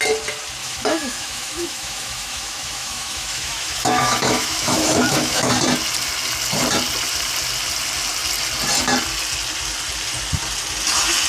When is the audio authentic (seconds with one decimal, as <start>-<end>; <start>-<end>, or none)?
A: 0.0-0.6; 5.5-11.3